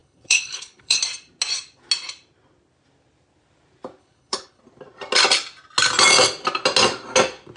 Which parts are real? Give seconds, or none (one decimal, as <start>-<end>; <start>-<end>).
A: 1.0-4.0; 4.6-7.6